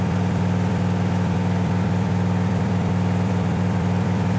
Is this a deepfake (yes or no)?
yes